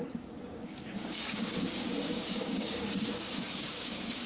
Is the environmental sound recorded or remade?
remade